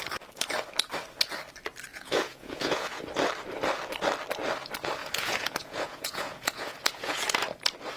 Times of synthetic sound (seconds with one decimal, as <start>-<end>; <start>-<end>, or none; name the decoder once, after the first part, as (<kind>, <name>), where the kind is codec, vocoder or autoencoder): 1.9-3.0 (vocoder, Vocos); 5.0-7.2